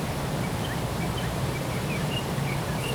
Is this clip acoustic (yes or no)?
no